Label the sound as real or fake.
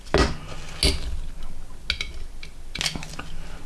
real